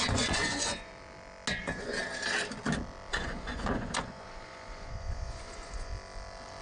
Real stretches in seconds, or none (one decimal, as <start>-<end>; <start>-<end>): 0.9-1.5; 1.9-3.1; 5.9-6.6